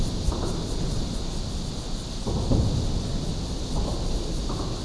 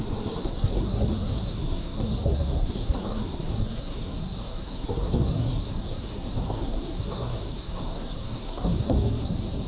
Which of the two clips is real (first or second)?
first